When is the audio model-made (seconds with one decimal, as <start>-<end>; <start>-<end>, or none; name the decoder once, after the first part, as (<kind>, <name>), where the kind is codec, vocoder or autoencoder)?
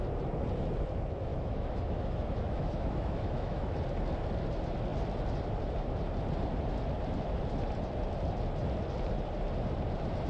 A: 1.3-3.7 (autoencoder, DAC-VAE)